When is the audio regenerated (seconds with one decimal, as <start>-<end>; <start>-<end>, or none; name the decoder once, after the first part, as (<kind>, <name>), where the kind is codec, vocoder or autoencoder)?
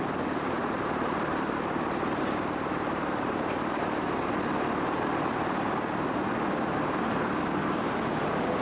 0.6-3.7 (vocoder, BigVGAN v2)